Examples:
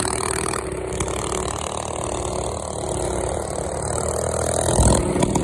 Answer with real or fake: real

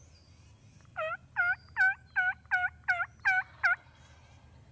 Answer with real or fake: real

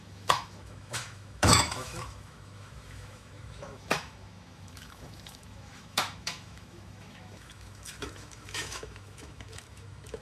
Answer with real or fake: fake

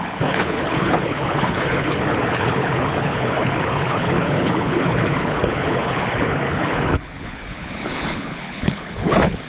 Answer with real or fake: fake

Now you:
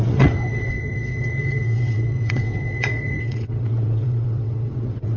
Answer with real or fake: fake